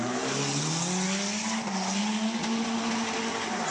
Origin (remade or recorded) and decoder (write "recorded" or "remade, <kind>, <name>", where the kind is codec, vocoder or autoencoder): recorded